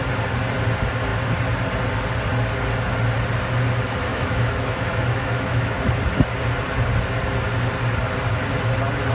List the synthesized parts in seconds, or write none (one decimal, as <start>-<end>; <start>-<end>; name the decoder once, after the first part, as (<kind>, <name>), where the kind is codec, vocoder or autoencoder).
4.1-5.9 (autoencoder, DAC-VAE)

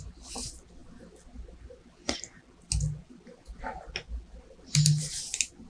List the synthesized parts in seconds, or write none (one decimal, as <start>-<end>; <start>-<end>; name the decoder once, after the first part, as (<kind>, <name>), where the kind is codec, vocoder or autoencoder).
none

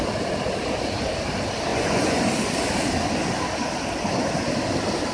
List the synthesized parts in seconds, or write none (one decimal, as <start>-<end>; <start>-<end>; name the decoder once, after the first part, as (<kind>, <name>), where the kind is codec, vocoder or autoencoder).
1.7-2.2 (vocoder, Vocos)